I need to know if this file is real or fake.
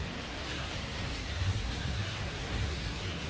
fake